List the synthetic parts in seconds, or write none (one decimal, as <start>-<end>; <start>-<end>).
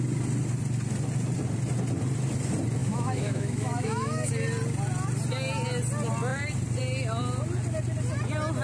2.8-4.3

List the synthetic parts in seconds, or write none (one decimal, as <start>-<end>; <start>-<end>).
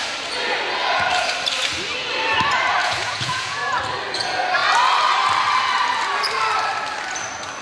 2.8-3.8